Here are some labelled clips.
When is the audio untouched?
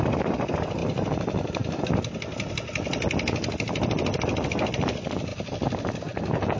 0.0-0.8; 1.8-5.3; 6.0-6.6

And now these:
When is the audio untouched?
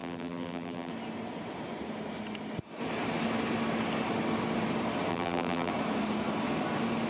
0.9-5.1; 5.7-7.1